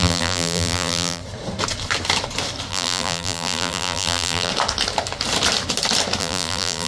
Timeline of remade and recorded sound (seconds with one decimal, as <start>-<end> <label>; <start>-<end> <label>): 0.0-1.2 remade; 1.2-2.7 recorded; 2.7-4.5 remade; 4.5-6.2 recorded; 6.2-6.9 remade